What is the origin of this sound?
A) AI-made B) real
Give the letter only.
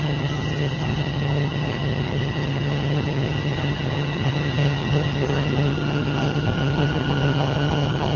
A